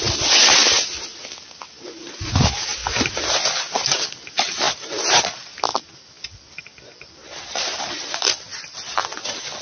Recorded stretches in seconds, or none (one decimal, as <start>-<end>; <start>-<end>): 0.0-2.8; 3.6-7.2; 8.0-9.6